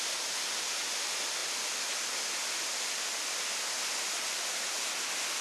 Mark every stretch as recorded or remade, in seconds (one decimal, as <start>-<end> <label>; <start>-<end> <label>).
0.0-5.4 recorded